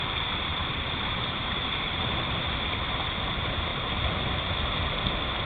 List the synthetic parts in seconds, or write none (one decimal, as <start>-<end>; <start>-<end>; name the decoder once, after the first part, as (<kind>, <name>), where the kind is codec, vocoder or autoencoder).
0.5-2.5 (vocoder, BigVGAN v2)